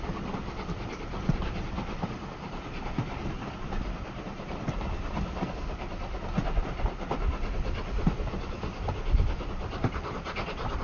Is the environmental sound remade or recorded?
recorded